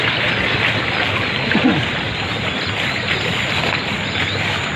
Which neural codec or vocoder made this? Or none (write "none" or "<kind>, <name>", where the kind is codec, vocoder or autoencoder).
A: none